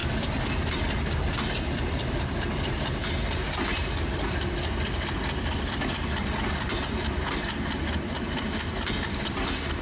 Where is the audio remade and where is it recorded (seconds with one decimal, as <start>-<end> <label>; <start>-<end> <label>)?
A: 0.0-9.8 recorded